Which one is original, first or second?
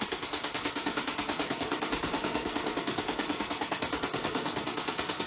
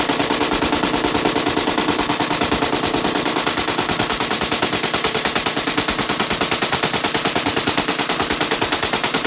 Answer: second